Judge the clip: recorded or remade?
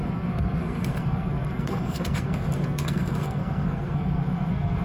remade